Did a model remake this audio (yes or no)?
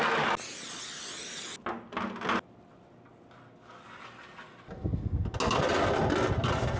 no